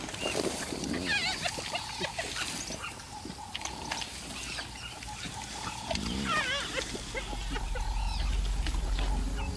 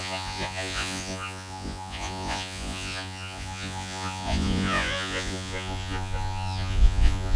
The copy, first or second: second